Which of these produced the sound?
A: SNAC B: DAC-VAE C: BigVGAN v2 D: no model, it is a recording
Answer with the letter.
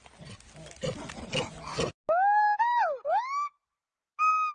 D